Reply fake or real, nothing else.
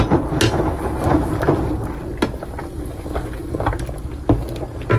real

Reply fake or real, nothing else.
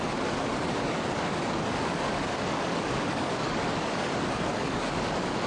fake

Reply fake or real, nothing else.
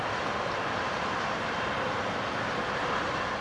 fake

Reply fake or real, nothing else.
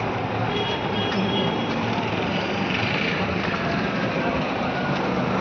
fake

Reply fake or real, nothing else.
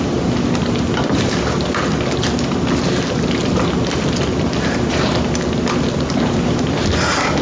real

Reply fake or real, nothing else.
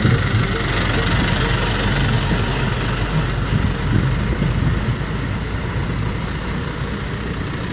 real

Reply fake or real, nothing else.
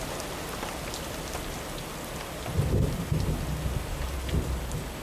real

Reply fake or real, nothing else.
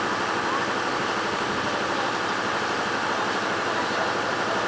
real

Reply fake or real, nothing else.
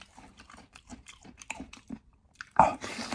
fake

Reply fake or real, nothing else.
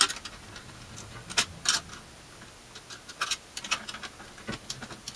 real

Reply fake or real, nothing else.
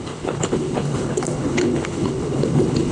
fake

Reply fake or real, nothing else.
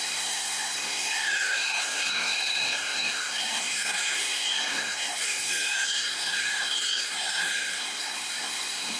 fake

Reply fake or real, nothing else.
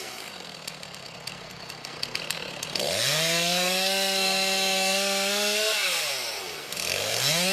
fake